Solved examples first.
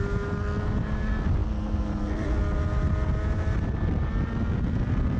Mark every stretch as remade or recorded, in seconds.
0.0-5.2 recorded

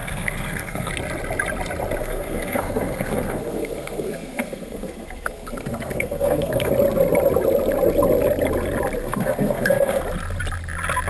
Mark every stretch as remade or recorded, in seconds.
0.0-0.9 remade; 0.9-2.0 recorded; 2.0-6.7 remade; 6.7-9.0 recorded; 9.0-10.0 remade; 10.0-11.1 recorded

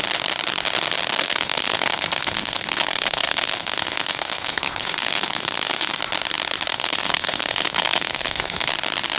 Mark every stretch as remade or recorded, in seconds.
0.0-1.1 recorded; 1.1-6.0 remade; 6.0-6.7 recorded; 6.7-8.7 remade; 8.7-9.2 recorded

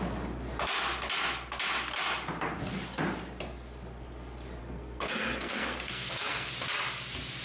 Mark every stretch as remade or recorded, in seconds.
0.0-4.6 recorded; 4.6-6.5 remade; 6.5-7.4 recorded

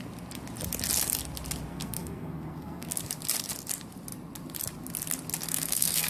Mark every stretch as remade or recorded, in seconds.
0.0-1.7 recorded; 1.7-3.0 remade; 3.0-5.5 recorded; 5.5-6.1 remade